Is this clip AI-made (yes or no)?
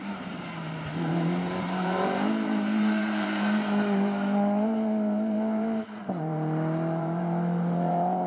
yes